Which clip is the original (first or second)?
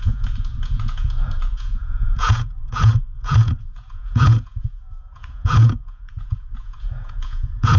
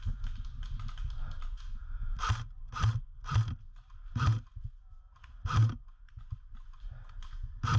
second